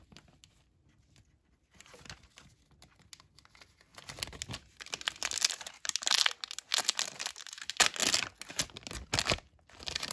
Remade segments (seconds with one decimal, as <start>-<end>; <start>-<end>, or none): none

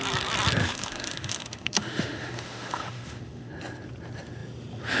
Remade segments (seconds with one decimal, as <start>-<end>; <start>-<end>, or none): 0.6-3.5